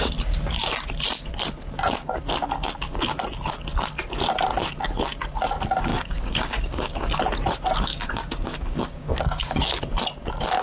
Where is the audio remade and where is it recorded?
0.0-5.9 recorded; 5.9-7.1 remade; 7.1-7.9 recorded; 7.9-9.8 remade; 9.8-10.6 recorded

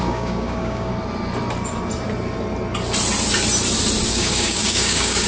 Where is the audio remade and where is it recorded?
0.0-0.9 remade; 0.9-4.1 recorded; 4.1-5.3 remade

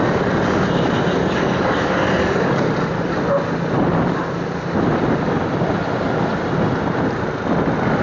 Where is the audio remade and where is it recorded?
0.0-1.2 recorded; 1.2-2.7 remade; 2.7-8.0 recorded

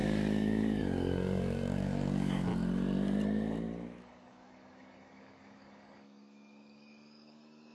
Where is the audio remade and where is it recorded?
0.0-2.5 remade; 2.5-4.0 recorded; 4.0-7.7 remade

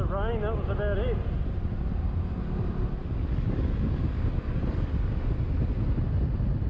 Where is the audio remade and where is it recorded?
0.0-3.0 recorded; 3.0-4.9 remade; 4.9-6.7 recorded